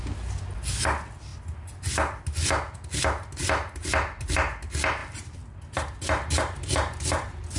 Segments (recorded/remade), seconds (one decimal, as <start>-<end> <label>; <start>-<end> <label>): 0.0-5.0 recorded; 5.0-7.6 remade